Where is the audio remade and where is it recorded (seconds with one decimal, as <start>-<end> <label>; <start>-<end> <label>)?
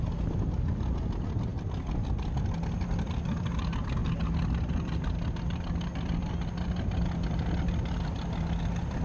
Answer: 0.0-9.0 recorded